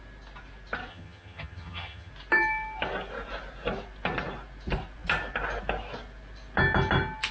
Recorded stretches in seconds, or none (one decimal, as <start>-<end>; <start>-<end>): 0.0-0.9; 2.1-7.3